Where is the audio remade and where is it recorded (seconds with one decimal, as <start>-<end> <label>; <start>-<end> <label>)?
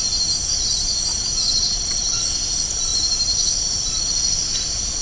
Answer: 0.0-1.4 recorded; 1.4-2.2 remade; 2.2-5.0 recorded